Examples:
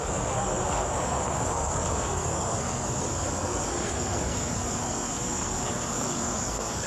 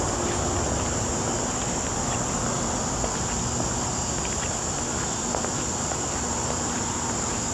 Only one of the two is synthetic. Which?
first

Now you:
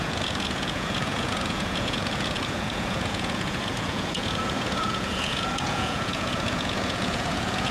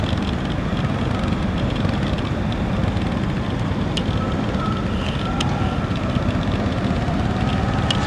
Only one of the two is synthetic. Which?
first